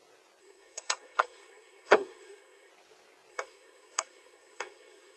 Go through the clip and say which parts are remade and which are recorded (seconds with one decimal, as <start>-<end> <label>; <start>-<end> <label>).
0.0-0.4 recorded; 0.4-2.7 remade; 2.7-3.3 recorded; 3.3-5.2 remade